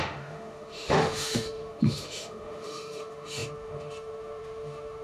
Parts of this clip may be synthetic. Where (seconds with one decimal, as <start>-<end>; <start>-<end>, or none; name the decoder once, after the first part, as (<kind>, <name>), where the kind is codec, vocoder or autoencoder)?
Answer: 0.0-5.0 (autoencoder, DAC-VAE)